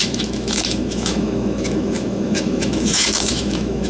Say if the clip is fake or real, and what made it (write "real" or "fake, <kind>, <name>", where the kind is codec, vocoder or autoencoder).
fake, autoencoder, DAC-VAE